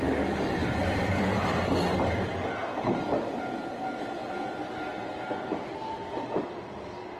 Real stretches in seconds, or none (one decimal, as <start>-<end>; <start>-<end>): 0.0-7.2